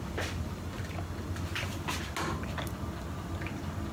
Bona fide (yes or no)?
yes